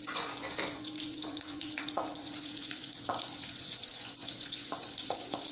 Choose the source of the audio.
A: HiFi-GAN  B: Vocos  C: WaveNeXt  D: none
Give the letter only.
B